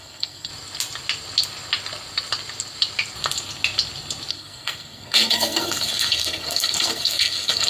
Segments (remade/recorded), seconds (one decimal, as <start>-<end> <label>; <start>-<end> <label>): 0.0-0.5 remade; 0.5-4.3 recorded; 4.3-7.7 remade